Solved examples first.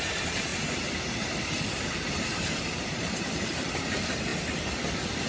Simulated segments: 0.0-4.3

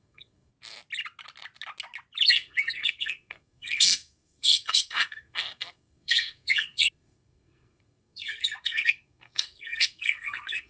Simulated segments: 0.0-0.5; 2.3-10.7

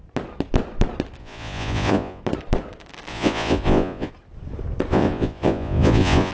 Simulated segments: 1.2-2.2; 3.1-4.1; 4.9-6.3